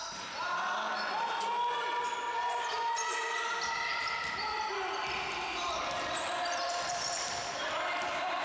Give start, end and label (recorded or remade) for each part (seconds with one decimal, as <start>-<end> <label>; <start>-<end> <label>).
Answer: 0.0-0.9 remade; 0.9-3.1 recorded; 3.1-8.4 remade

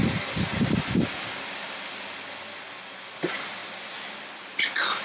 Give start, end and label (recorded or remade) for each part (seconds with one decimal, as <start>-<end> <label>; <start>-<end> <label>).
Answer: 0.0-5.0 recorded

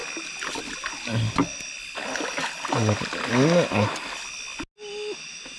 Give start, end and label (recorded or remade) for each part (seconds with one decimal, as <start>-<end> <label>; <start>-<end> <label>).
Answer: 0.0-5.6 recorded